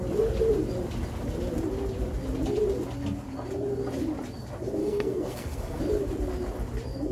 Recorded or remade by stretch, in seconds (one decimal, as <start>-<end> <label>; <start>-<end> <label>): 0.0-4.8 recorded; 4.8-5.8 remade; 5.8-7.1 recorded